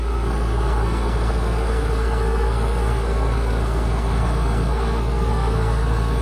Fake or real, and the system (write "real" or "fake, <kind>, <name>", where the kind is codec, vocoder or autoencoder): fake, codec, SNAC